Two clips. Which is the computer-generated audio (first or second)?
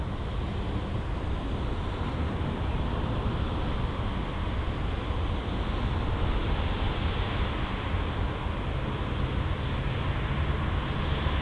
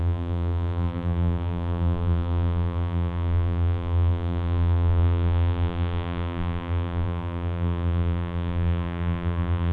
second